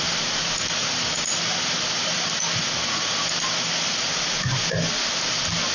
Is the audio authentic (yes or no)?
yes